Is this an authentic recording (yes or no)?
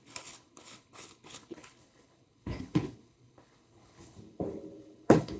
no